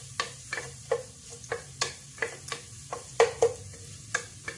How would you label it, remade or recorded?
recorded